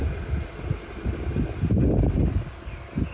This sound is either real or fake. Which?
real